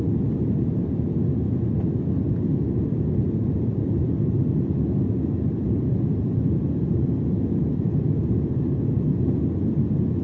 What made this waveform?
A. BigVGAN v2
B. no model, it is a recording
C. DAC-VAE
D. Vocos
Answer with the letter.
B